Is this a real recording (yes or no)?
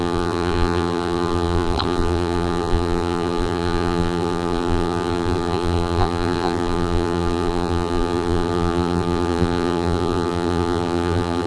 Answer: no